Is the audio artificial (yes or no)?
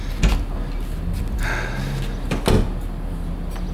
no